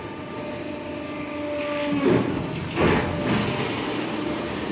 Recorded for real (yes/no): yes